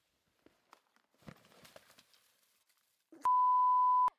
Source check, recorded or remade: recorded